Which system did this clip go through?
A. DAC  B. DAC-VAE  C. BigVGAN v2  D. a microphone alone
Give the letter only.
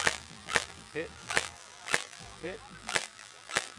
C